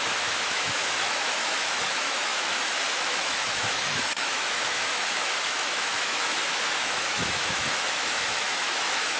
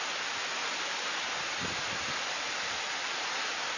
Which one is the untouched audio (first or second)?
second